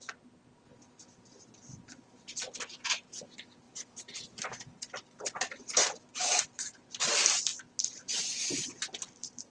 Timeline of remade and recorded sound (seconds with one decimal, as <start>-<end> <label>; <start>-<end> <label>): 0.0-9.5 recorded